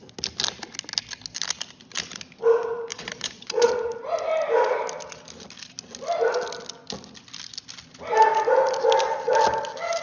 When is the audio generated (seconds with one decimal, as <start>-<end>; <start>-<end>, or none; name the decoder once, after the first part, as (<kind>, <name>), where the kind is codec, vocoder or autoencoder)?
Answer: 2.9-3.7 (vocoder, Vocos)